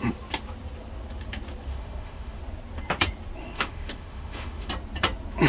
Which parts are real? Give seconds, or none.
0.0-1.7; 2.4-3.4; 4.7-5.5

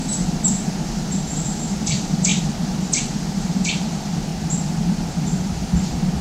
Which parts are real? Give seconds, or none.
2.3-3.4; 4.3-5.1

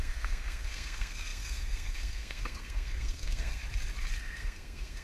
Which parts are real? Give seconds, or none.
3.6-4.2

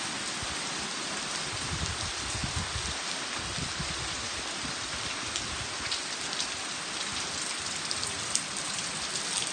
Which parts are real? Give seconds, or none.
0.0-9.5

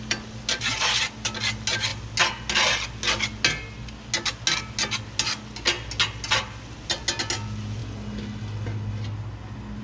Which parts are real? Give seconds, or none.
0.0-9.8